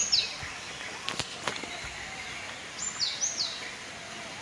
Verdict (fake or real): real